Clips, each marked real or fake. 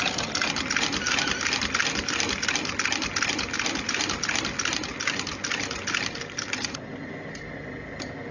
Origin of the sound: real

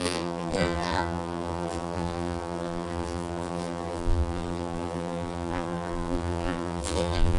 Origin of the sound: fake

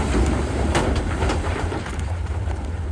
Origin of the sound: fake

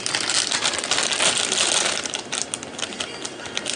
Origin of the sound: real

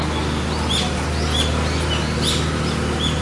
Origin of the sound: real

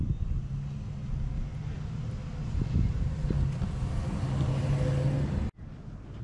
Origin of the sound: real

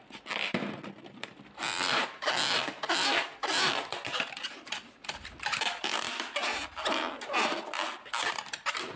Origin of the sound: real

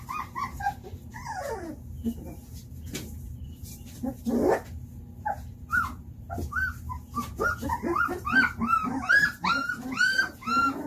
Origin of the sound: fake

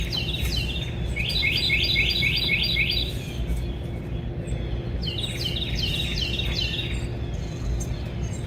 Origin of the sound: real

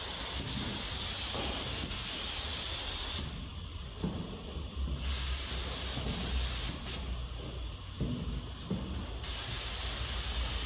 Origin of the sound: real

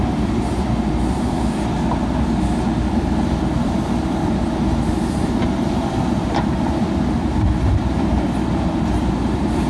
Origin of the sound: fake